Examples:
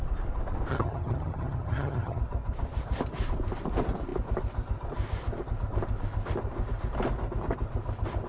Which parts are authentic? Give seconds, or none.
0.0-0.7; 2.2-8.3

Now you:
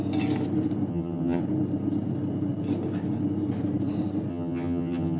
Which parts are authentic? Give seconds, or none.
0.0-0.9; 1.4-4.3